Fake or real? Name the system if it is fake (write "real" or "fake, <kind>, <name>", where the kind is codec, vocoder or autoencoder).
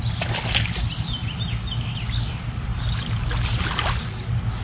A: real